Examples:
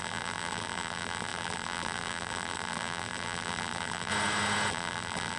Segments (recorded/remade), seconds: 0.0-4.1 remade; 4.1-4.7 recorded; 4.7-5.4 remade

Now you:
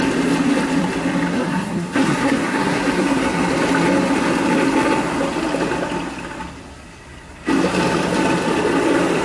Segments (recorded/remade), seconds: 0.0-1.3 recorded; 1.3-3.2 remade; 3.2-9.2 recorded

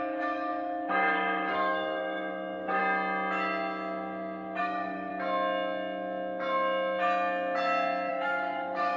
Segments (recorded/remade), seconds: 0.0-2.8 remade; 2.8-4.6 recorded; 4.6-5.1 remade; 5.1-8.1 recorded; 8.1-9.0 remade

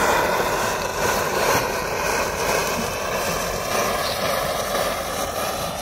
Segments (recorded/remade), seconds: 0.0-0.9 recorded; 0.9-1.6 remade; 1.6-5.8 recorded

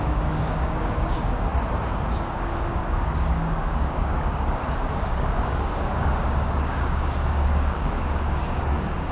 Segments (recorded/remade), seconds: 0.0-1.5 remade; 1.5-2.1 recorded; 2.1-9.1 remade

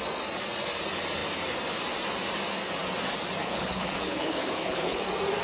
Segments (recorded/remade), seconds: 0.0-3.4 recorded; 3.4-5.0 remade; 5.0-5.4 recorded

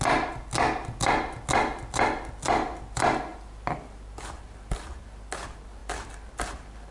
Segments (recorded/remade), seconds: 0.0-6.9 recorded

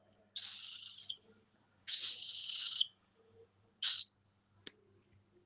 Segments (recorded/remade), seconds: 0.0-1.8 recorded; 1.8-3.8 remade; 3.8-5.5 recorded